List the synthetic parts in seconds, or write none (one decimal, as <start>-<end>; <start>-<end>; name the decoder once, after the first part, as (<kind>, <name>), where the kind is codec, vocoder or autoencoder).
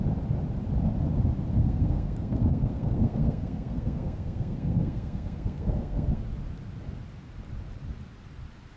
1.6-6.2 (codec, SNAC)